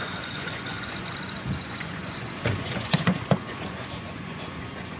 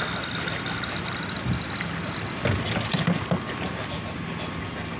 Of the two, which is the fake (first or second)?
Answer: first